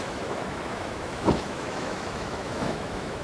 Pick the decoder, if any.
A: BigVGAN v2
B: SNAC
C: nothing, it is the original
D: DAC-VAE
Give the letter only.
D